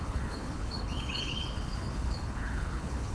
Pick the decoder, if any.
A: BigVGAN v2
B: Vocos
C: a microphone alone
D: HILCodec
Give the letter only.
D